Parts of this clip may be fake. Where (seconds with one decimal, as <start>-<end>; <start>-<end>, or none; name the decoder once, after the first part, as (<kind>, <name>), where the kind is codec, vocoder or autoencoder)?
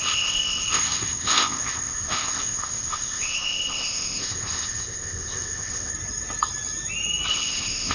0.0-5.9 (codec, ZipCodec); 7.3-7.9